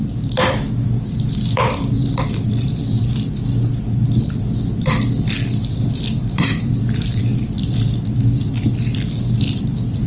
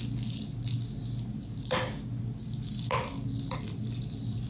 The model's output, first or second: first